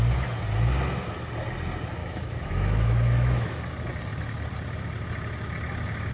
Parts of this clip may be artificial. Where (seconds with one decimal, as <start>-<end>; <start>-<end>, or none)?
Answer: 2.0-3.6